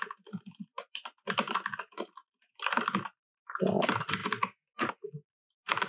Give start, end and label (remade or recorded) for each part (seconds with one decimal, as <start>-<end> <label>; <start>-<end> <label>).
0.0-5.9 recorded